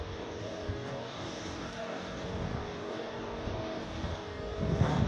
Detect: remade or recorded remade